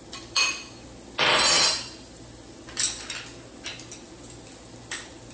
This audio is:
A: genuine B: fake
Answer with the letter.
A